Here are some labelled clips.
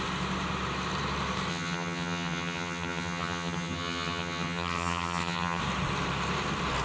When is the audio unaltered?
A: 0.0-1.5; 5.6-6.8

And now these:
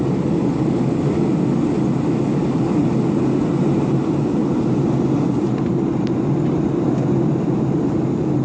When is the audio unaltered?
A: 0.0-8.4